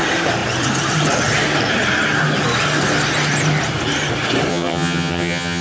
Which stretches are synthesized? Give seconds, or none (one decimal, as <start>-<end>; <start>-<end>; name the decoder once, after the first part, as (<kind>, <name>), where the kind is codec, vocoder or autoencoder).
4.5-5.6 (vocoder, HiFi-GAN)